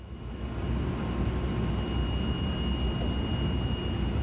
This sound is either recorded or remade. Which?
recorded